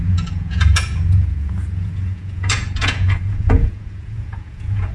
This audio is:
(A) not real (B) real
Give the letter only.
A